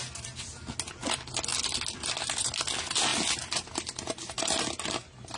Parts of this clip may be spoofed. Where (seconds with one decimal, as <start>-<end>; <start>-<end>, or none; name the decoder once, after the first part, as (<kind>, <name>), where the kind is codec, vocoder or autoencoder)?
none